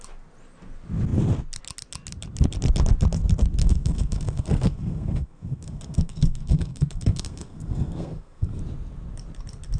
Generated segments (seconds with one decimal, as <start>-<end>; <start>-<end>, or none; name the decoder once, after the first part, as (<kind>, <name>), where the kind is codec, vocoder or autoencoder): 3.6-8.6 (codec, SNAC)